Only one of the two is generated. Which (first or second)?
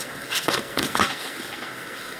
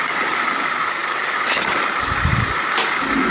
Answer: first